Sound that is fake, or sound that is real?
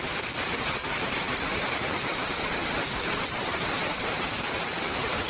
fake